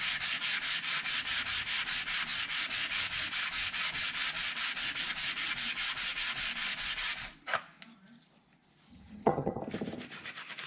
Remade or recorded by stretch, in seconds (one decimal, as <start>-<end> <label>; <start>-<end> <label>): 0.0-8.9 recorded; 8.9-9.6 remade; 9.6-10.7 recorded